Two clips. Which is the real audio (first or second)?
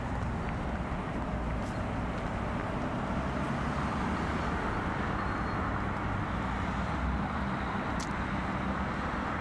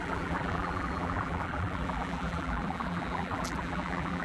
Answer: first